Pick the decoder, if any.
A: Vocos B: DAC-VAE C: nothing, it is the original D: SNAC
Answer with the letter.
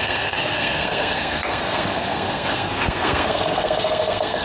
D